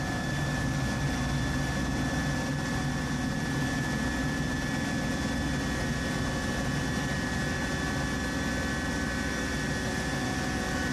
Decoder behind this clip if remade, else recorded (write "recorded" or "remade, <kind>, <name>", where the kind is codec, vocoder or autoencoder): recorded